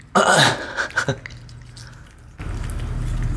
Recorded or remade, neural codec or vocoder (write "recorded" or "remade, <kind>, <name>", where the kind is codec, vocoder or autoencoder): recorded